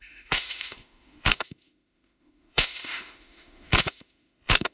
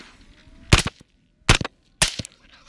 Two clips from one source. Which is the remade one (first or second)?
first